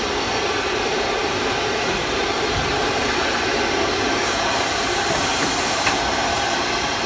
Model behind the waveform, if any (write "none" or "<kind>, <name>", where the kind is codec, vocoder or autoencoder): vocoder, BigVGAN v2